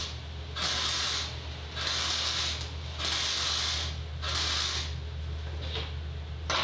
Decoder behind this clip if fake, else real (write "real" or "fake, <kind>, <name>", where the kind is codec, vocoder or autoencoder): real